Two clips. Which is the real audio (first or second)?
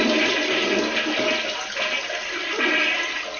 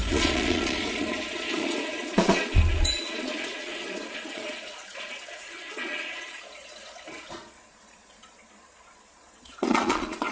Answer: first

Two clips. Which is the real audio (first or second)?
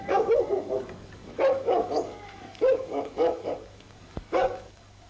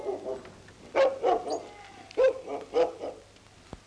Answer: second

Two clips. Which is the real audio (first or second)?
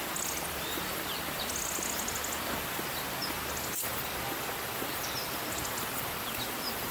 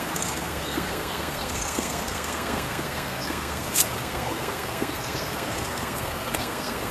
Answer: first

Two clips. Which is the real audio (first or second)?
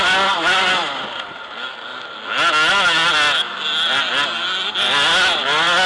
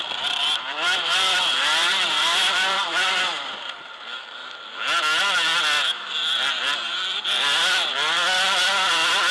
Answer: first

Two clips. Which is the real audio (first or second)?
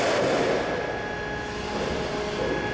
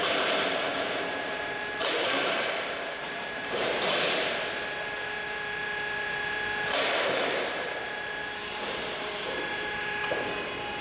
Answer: first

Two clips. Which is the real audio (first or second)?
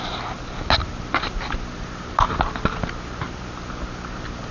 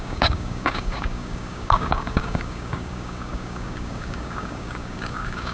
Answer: first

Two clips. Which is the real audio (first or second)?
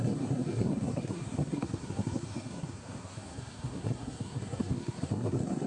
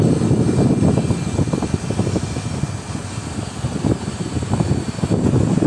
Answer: second